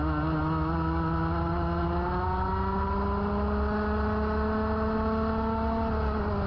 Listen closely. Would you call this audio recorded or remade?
recorded